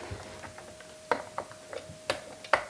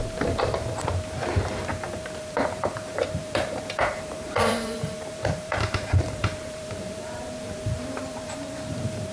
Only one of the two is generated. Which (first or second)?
second